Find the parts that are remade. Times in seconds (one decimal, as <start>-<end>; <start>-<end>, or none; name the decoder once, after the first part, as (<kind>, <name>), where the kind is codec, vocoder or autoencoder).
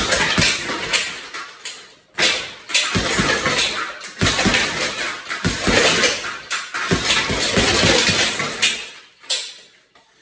none